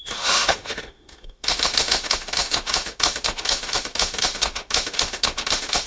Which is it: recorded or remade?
remade